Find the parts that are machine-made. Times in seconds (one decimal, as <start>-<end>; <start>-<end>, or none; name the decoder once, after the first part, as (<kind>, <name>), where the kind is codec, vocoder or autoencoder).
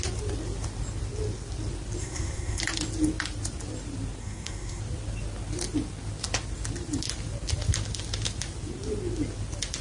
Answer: 2.0-2.6 (codec, SNAC); 4.2-4.8